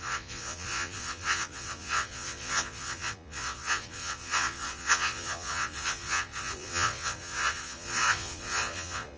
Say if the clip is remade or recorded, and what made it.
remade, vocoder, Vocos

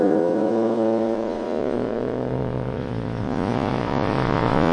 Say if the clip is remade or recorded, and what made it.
remade, vocoder, Vocos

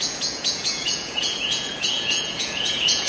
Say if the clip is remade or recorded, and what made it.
remade, vocoder, Vocos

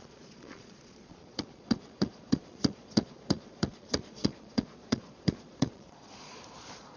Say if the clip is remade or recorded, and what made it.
remade, vocoder, Vocos